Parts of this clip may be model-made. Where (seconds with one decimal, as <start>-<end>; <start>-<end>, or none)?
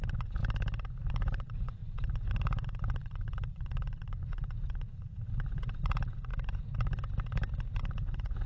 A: 0.0-0.4; 1.1-6.3; 7.8-8.5